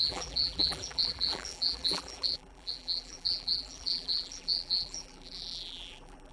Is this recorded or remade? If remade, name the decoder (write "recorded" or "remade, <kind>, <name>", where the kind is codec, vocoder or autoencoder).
remade, vocoder, BigVGAN v2